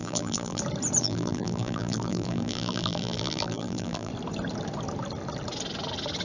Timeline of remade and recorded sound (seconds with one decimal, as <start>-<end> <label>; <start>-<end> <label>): 0.0-0.6 remade; 0.6-1.0 recorded; 1.0-4.1 remade; 4.1-6.2 recorded